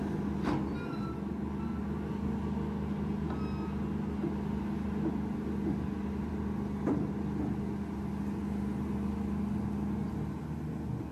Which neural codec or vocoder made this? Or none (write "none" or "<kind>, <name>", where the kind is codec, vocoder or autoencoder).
none